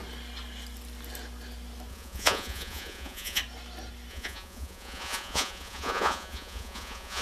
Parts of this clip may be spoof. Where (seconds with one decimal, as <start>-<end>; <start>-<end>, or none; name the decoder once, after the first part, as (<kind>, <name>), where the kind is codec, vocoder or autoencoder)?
1.9-3.4 (vocoder, Vocos); 4.1-7.2